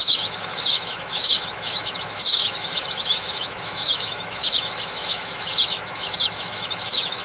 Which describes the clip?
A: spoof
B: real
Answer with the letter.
A